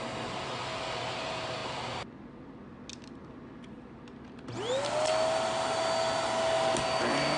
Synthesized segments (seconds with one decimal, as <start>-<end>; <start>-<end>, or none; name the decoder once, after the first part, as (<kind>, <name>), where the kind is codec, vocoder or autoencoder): none

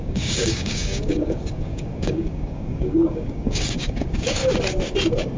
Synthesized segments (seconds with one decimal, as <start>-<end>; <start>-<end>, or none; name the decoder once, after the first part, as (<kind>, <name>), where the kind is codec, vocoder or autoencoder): 0.0-4.4 (codec, DAC)